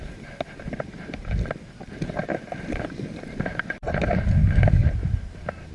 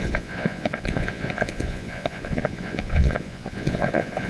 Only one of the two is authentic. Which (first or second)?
first